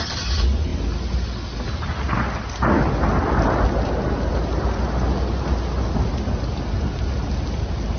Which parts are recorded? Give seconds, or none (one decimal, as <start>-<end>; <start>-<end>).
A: 0.0-8.0